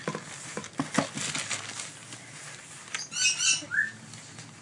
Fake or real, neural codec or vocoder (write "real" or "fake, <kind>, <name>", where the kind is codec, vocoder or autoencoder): real